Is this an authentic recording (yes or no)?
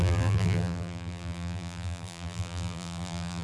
no